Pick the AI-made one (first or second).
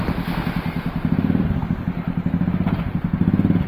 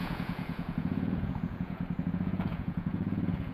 second